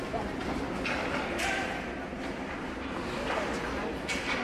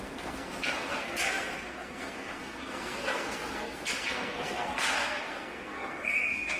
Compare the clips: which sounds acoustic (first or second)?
first